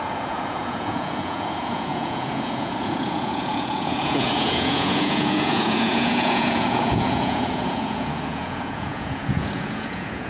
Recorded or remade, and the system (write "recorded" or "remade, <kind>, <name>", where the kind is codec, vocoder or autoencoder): remade, vocoder, Vocos